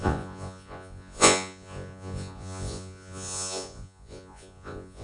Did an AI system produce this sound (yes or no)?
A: yes